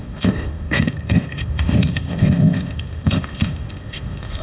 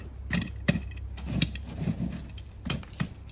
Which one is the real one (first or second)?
second